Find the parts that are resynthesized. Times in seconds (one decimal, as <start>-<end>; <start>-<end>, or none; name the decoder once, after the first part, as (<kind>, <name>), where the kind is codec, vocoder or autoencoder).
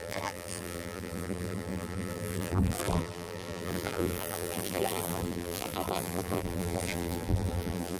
0.0-8.0 (vocoder, BigVGAN v2)